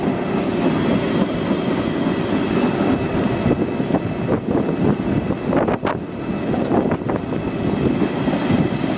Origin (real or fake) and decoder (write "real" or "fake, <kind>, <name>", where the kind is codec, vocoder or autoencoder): real